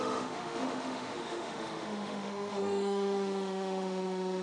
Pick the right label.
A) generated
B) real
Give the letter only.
A